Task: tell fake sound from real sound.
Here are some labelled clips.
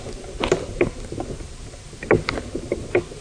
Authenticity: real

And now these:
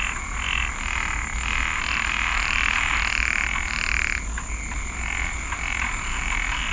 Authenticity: real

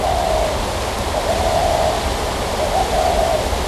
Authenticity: real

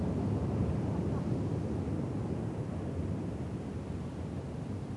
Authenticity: real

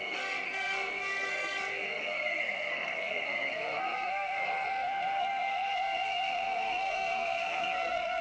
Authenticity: fake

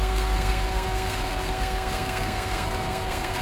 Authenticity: fake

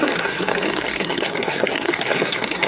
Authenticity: fake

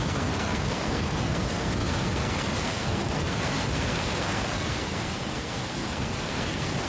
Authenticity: fake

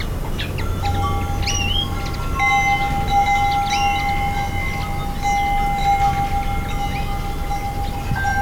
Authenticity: real